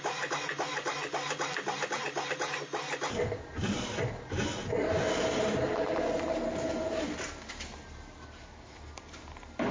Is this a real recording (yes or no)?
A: yes